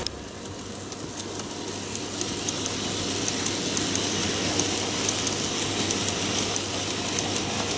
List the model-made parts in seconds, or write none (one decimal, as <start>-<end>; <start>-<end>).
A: none